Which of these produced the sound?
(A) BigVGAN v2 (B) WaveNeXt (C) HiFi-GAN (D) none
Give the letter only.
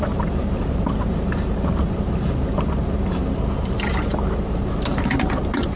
A